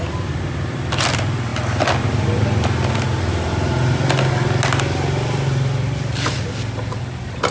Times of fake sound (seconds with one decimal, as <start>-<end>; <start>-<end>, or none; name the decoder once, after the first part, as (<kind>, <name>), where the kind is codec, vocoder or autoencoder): none